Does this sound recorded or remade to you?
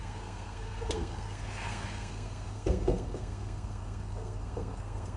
remade